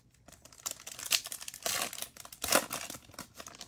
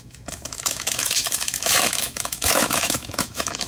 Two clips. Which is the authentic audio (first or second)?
first